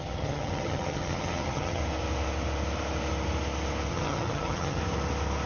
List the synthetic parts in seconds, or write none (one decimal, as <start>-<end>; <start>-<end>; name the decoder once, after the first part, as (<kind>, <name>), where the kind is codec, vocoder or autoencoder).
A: 0.0-1.8 (vocoder, HiFi-GAN); 3.9-4.8